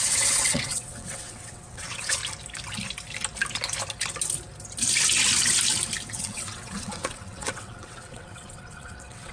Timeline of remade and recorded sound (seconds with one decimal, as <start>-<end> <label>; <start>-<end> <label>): 0.0-2.2 remade; 2.2-6.1 recorded; 6.1-9.3 remade